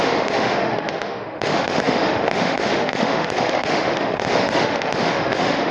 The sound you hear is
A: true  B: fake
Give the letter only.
B